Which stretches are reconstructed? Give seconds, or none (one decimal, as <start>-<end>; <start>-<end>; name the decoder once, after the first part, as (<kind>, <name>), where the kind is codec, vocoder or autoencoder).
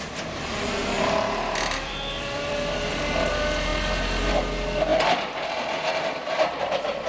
0.8-3.0 (vocoder, BigVGAN v2); 4.9-7.1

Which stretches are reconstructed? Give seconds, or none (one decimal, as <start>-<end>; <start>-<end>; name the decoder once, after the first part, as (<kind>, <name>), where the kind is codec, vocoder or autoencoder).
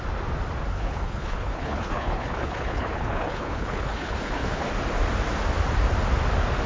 0.7-4.7 (codec, HILCodec)